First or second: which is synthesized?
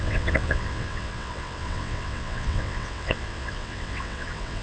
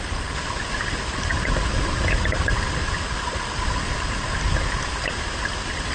first